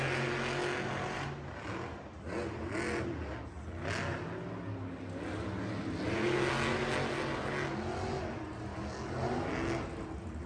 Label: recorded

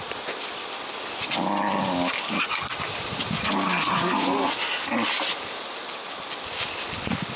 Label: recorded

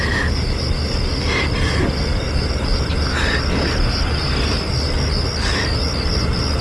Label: recorded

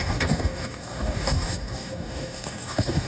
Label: remade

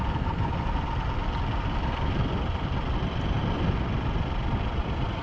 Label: recorded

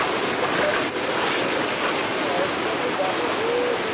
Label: recorded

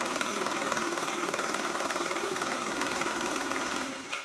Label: remade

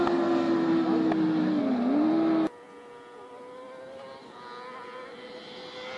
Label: recorded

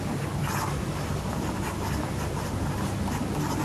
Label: recorded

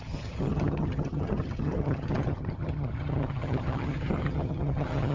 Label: remade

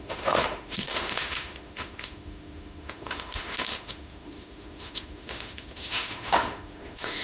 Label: remade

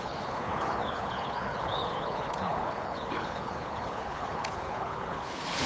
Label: remade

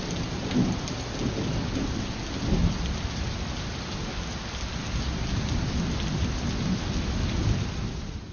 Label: recorded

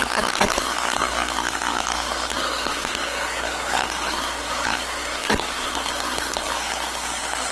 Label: remade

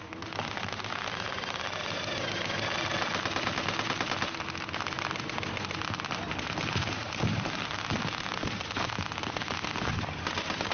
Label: recorded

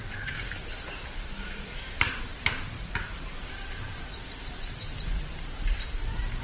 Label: remade